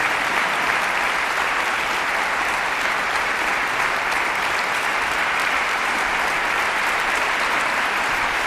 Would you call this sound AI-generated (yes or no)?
yes